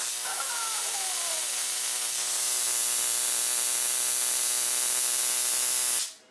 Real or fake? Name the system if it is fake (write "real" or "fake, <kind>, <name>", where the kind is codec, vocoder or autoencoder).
real